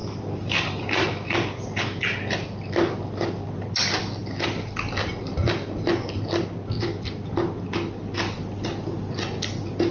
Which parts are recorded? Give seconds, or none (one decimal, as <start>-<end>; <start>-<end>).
0.0-9.9